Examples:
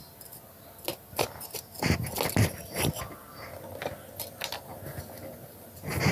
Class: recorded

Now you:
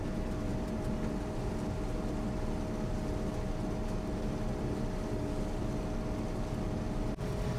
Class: recorded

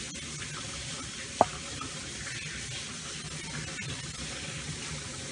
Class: recorded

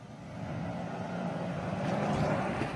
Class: recorded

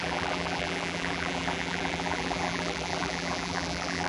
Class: remade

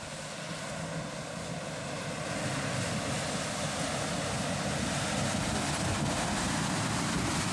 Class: recorded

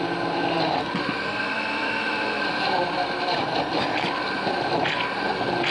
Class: remade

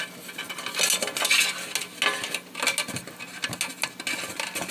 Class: recorded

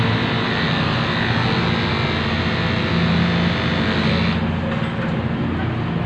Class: recorded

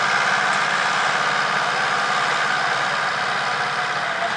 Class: recorded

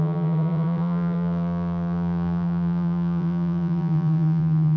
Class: remade